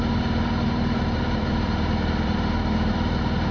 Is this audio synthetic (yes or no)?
yes